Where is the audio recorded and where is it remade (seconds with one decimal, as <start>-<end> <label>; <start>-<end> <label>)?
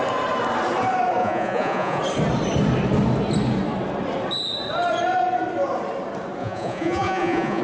0.0-1.2 recorded; 1.2-2.0 remade; 2.0-6.4 recorded; 6.4-7.6 remade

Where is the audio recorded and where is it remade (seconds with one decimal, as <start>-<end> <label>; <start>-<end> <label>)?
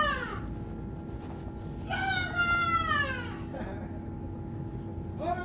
0.0-5.4 recorded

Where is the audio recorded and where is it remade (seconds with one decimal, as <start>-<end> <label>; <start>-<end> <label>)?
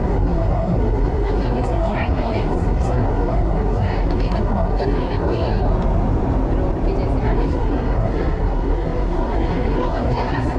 0.0-5.7 remade; 5.7-7.2 recorded; 7.2-10.6 remade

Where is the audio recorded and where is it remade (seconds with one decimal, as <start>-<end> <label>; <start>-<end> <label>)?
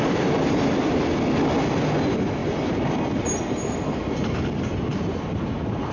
0.0-5.9 recorded